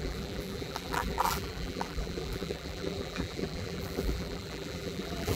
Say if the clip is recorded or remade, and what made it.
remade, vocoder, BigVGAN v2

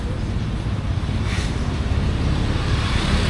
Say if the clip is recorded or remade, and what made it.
remade, vocoder, BigVGAN v2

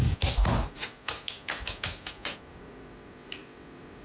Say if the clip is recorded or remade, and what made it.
recorded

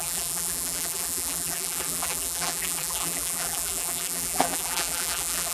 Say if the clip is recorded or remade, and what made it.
remade, vocoder, BigVGAN v2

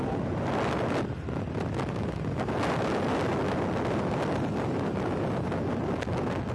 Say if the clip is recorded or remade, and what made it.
recorded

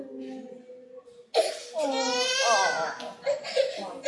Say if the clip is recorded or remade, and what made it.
recorded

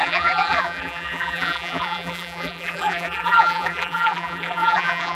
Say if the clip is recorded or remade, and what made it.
remade, vocoder, BigVGAN v2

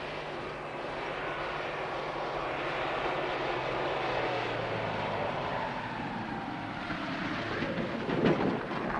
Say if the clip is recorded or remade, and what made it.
recorded